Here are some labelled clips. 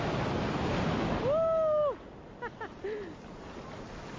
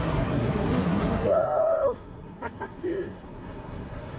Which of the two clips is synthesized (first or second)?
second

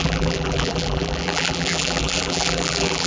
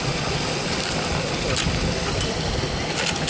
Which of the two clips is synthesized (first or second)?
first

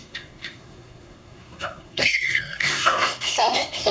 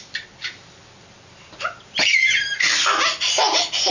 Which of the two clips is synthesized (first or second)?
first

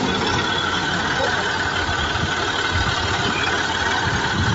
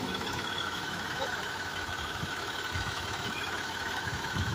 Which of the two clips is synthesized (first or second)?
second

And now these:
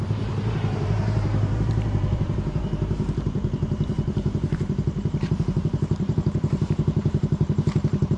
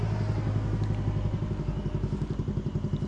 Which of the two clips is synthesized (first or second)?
first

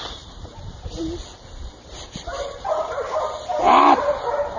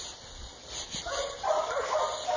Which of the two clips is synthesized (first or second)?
first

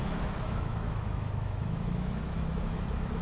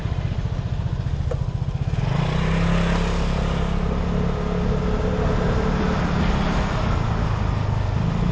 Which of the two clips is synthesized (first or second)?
first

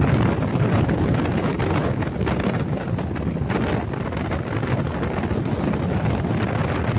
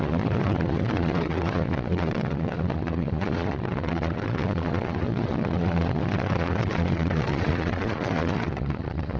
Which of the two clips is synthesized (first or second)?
second